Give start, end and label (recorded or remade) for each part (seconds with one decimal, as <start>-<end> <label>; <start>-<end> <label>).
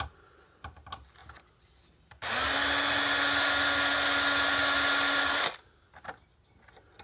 0.0-7.0 recorded